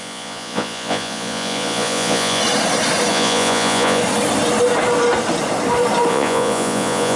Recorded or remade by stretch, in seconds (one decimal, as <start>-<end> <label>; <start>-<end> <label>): 0.0-2.4 remade; 2.4-3.1 recorded; 3.1-4.0 remade; 4.0-6.1 recorded; 6.1-7.2 remade